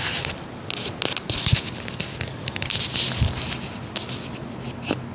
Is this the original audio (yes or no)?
yes